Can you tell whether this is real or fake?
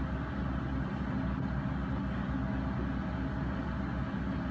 real